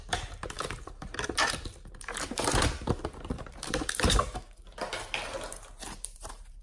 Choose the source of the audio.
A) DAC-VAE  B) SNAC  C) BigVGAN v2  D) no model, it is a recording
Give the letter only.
C